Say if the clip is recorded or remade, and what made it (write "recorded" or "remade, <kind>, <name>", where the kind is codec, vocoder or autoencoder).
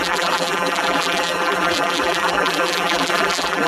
remade, vocoder, BigVGAN v2